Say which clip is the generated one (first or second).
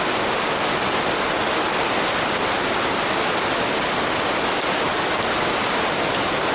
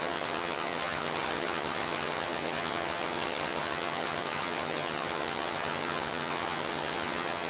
second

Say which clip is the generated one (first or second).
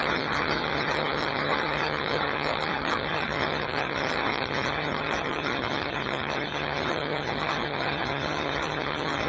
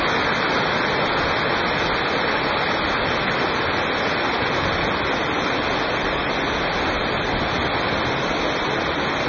first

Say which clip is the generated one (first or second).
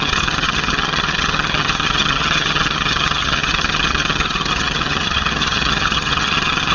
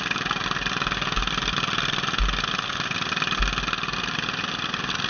first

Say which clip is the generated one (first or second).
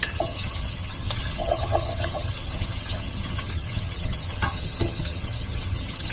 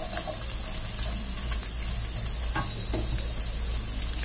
first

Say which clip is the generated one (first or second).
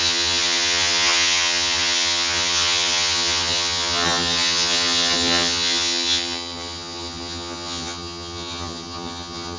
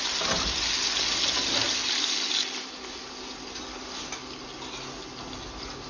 first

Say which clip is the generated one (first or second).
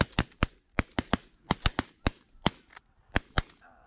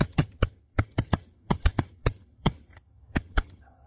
second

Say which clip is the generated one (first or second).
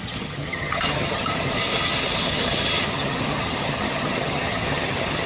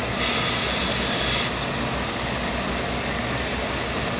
first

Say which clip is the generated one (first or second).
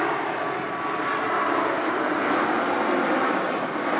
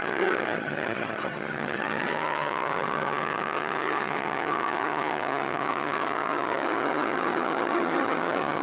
second